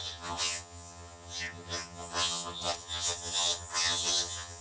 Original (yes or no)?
no